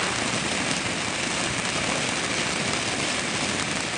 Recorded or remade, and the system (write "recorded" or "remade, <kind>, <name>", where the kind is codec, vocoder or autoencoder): recorded